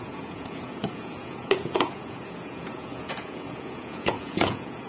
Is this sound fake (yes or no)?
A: yes